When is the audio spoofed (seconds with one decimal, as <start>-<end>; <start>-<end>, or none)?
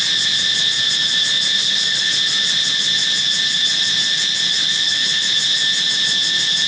1.6-2.1; 4.6-5.2